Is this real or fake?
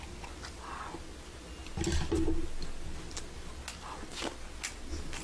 real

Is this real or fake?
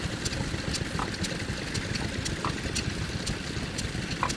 real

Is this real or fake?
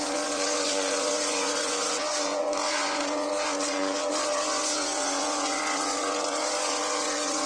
fake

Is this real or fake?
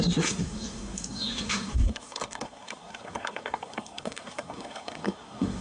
fake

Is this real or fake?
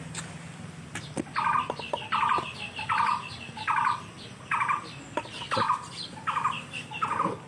real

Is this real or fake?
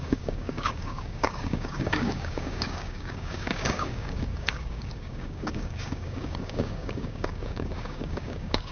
fake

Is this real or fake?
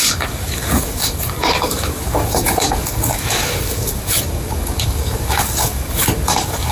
fake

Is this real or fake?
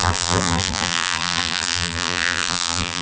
fake